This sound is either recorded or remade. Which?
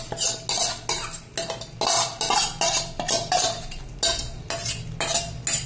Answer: recorded